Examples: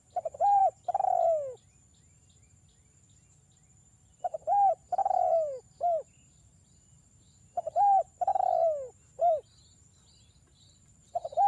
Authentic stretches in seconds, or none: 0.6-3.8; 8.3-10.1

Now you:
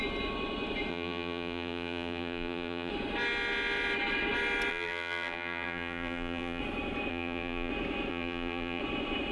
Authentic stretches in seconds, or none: 0.0-0.9; 2.9-4.7; 6.6-7.1; 7.7-8.1; 8.8-9.3